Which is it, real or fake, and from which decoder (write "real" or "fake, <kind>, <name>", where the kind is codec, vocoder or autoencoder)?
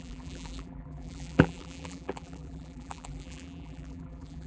fake, vocoder, BigVGAN v2